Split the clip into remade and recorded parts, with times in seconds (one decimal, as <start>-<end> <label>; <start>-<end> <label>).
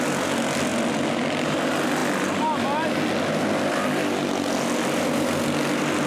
0.0-6.1 recorded